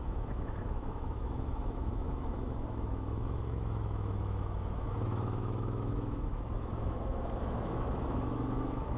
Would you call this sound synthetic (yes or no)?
yes